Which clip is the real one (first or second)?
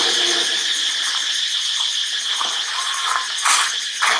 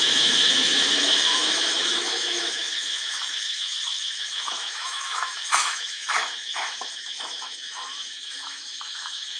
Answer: first